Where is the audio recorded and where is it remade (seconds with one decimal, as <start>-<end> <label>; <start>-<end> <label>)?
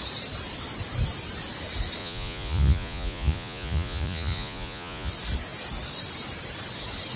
0.0-2.0 recorded; 2.0-5.1 remade; 5.1-7.2 recorded